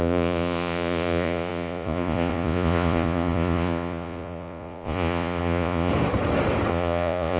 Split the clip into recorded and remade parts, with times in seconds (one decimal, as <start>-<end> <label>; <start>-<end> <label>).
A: 0.0-5.9 remade; 5.9-6.7 recorded; 6.7-7.4 remade